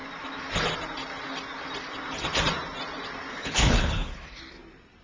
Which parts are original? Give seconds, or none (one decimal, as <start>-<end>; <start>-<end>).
0.0-3.3; 4.4-5.0